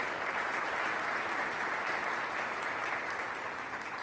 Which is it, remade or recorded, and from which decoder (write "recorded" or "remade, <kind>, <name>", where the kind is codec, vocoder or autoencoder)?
recorded